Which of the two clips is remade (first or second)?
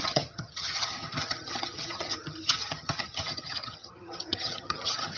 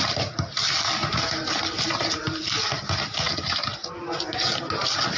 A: first